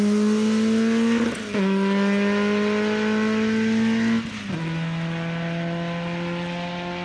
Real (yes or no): yes